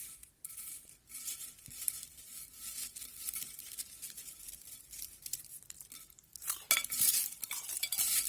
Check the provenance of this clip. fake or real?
fake